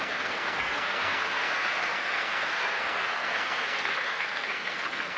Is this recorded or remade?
remade